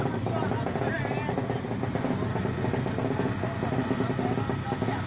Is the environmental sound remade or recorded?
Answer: recorded